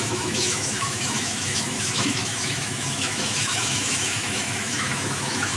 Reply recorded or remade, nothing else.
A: remade